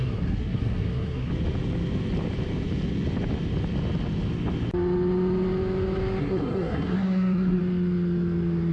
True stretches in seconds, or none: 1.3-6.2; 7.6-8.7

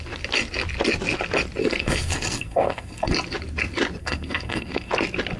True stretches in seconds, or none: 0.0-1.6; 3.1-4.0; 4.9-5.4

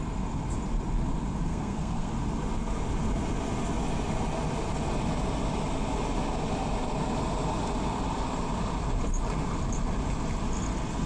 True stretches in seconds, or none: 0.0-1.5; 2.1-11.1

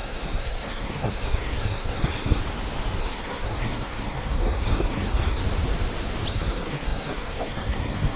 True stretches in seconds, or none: 2.4-3.0; 5.4-6.3

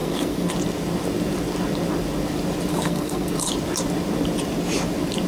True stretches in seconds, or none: 0.5-2.7; 3.3-5.3